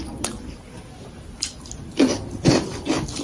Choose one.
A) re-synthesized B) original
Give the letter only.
B